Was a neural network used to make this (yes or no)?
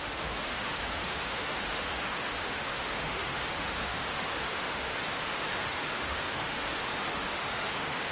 yes